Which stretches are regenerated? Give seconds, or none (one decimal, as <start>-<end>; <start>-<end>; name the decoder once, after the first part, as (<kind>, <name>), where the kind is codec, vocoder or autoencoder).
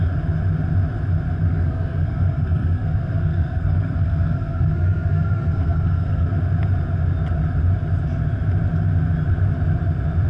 1.5-6.3 (codec, SNAC)